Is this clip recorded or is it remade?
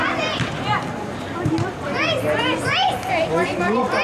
recorded